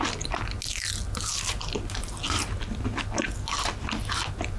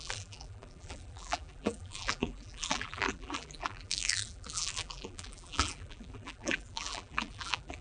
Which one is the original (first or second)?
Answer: first